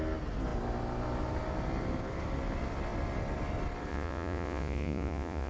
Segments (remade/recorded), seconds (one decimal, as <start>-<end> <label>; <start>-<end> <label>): 0.0-3.9 recorded; 3.9-5.5 remade